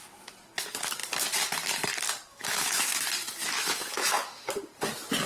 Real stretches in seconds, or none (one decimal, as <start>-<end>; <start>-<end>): 0.0-2.3; 2.9-3.4; 4.5-5.3